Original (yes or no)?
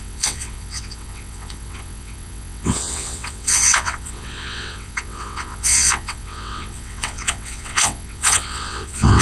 no